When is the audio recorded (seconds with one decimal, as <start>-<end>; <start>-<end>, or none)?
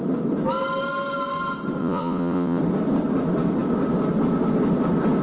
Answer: 0.0-1.8; 2.6-5.2